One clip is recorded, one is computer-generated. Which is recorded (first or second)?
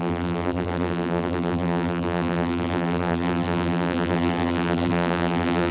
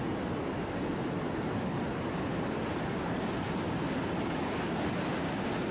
second